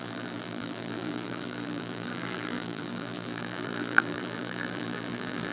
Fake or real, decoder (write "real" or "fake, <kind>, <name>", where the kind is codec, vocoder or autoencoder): fake, vocoder, BigVGAN v2